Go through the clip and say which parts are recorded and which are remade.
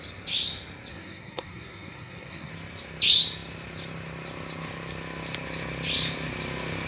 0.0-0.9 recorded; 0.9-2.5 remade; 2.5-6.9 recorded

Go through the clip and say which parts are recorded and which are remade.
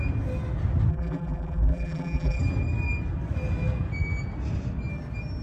0.0-0.9 recorded; 0.9-2.4 remade; 2.4-5.4 recorded